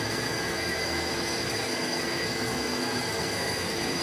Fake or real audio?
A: fake